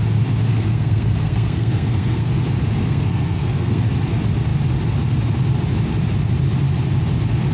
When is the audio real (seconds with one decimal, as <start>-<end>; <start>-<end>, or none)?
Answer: 0.0-0.5; 2.3-2.8; 3.8-7.5